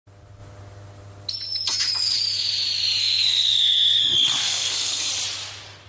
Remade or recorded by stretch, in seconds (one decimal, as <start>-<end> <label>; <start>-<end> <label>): 0.0-3.0 recorded; 3.0-4.0 remade; 4.0-4.4 recorded; 4.4-5.1 remade; 5.1-5.9 recorded